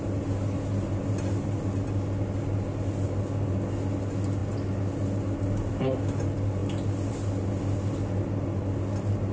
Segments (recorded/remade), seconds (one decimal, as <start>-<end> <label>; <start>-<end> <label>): 0.0-9.3 recorded